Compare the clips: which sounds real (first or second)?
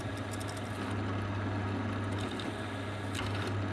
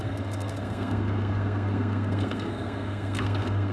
first